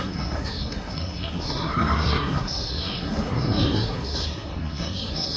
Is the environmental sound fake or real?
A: fake